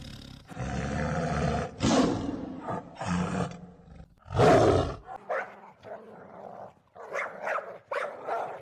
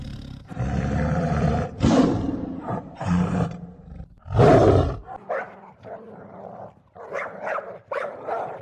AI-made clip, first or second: second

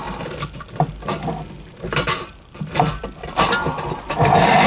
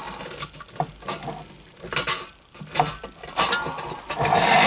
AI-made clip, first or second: first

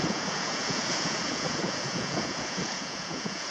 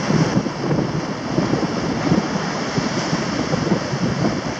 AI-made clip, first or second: first